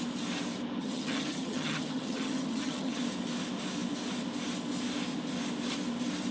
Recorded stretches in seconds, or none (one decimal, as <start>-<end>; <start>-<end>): 0.0-0.8; 3.0-6.3